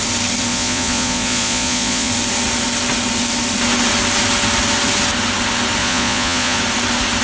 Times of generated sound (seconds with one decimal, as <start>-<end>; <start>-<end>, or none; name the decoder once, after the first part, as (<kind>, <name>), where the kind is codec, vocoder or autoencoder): 0.5-2.1 (vocoder, Vocos); 5.8-6.6